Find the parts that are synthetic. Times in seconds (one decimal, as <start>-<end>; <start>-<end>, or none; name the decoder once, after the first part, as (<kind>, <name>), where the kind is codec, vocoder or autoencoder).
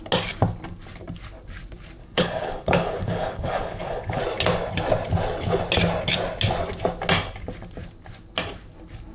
2.0-4.2 (codec, HILCodec)